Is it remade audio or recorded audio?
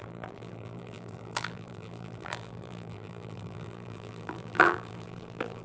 remade